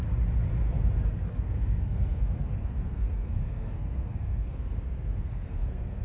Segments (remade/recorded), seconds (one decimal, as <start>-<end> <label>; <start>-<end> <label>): 0.0-1.3 recorded; 1.3-6.0 remade